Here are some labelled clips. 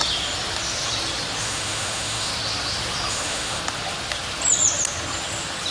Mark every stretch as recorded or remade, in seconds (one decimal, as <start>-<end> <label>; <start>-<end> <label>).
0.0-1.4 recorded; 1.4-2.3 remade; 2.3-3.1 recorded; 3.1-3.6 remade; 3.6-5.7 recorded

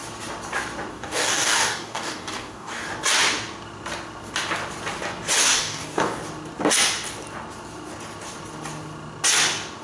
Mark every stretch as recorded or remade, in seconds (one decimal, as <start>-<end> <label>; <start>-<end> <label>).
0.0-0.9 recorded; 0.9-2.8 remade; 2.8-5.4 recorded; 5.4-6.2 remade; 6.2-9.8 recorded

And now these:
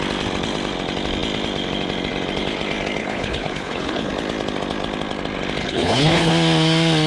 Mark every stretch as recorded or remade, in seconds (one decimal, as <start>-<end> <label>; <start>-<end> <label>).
0.0-3.0 recorded; 3.0-4.1 remade; 4.1-5.6 recorded; 5.6-6.3 remade; 6.3-7.1 recorded

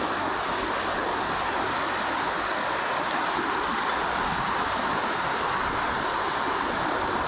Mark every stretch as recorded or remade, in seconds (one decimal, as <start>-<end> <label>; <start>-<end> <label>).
0.0-7.3 recorded